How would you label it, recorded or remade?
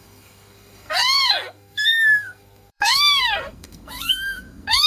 remade